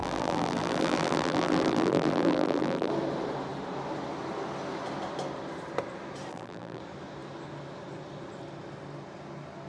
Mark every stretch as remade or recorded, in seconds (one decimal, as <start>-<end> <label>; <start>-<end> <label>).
0.0-2.9 remade; 2.9-6.3 recorded; 6.3-6.8 remade; 6.8-9.7 recorded